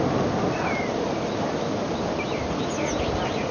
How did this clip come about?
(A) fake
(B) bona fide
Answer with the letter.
B